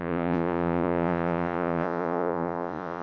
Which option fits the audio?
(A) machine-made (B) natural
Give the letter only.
A